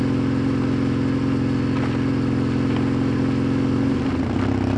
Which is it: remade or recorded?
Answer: recorded